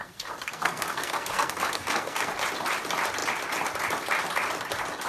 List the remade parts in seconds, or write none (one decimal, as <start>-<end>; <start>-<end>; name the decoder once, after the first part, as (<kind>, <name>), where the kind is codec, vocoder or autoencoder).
0.0-2.3 (codec, SNAC)